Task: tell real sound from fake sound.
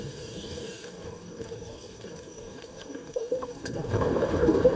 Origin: fake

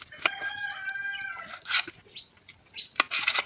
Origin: real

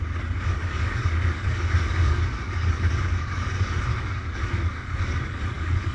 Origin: fake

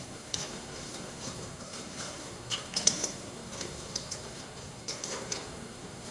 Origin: fake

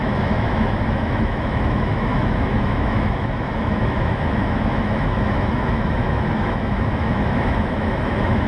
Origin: fake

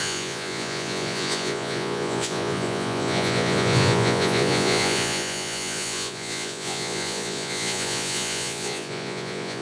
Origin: fake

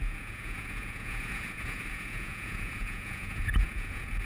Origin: fake